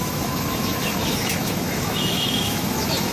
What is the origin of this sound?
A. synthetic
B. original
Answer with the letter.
A